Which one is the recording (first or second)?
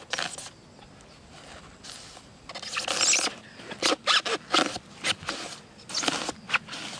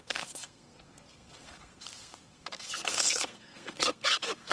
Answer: first